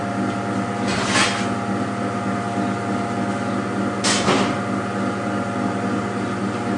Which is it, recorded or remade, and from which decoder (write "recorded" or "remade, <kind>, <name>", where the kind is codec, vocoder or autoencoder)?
recorded